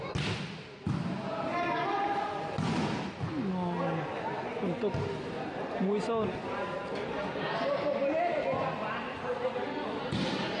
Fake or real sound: real